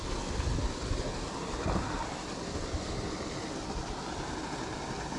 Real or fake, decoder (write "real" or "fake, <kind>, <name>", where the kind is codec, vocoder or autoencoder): real